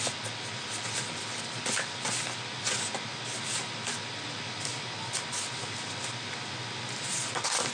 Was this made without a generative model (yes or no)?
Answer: yes